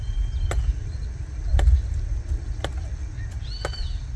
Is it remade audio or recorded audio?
recorded